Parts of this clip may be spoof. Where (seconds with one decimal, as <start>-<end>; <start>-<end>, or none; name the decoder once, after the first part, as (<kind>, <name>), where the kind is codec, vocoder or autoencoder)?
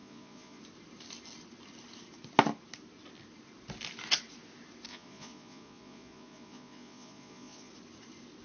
0.0-0.6 (vocoder, Vocos); 4.9-7.7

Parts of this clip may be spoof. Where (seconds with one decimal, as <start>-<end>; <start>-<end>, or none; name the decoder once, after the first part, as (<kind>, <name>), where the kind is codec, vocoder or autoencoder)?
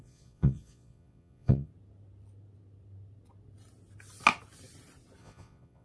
0.0-1.7 (vocoder, Vocos); 5.2-5.8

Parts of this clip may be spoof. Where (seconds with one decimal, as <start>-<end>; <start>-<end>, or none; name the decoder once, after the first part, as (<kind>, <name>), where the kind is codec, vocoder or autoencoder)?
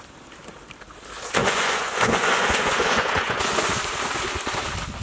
1.4-3.7 (vocoder, Vocos)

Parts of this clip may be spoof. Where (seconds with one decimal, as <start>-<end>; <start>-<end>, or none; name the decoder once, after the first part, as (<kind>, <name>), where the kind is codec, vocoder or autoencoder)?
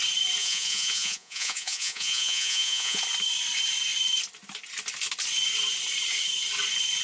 0.4-3.0 (vocoder, Vocos)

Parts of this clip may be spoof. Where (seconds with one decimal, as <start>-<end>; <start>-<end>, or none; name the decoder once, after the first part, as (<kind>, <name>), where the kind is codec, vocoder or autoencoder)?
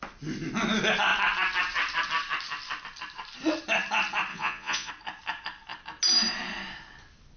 4.3-4.9 (vocoder, Vocos)